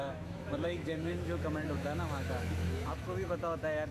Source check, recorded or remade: remade